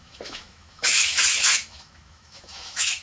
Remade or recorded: remade